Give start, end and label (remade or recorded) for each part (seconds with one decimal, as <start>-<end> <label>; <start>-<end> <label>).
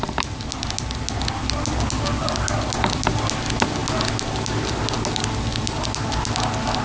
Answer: 0.0-5.5 recorded; 5.5-6.1 remade; 6.1-6.8 recorded